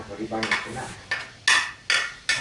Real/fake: real